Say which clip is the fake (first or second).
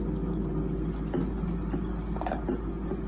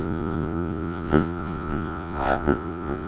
second